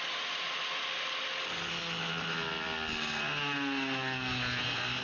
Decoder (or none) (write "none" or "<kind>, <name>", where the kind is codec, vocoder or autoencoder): none